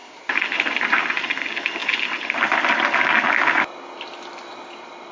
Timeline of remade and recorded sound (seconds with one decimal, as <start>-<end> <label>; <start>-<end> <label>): 0.0-1.3 remade; 1.3-5.1 recorded